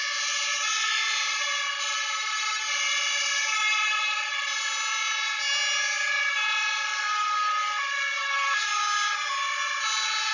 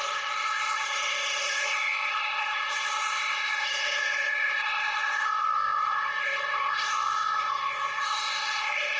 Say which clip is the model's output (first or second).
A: second